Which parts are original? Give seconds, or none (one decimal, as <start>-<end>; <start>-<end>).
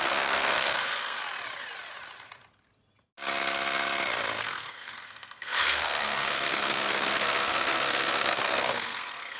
1.2-4.4